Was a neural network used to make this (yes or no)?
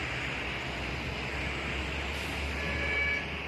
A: no